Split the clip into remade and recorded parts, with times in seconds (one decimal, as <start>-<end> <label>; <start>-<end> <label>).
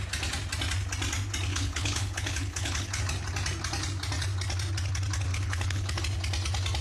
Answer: 0.0-1.5 recorded; 1.5-3.0 remade; 3.0-5.3 recorded; 5.3-6.0 remade; 6.0-6.8 recorded